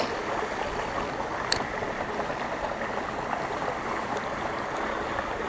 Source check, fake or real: real